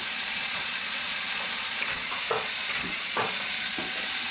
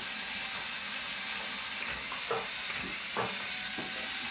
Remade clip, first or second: first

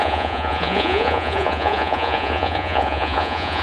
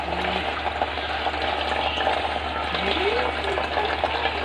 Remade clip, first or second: first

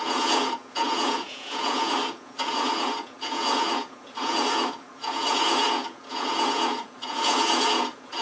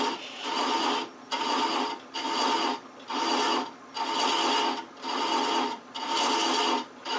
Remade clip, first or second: first